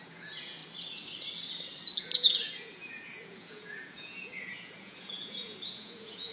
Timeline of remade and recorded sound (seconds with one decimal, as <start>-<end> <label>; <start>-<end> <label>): 0.0-0.6 remade; 0.6-2.0 recorded; 2.0-6.3 remade